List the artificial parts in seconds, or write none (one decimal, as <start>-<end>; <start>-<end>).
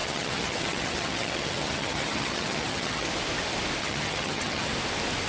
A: 0.0-3.1; 3.8-4.7